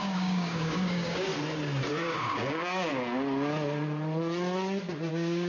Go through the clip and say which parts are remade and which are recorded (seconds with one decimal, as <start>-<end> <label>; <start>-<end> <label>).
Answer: 0.0-1.3 remade; 1.3-1.9 recorded; 1.9-2.9 remade; 2.9-5.1 recorded; 5.1-5.5 remade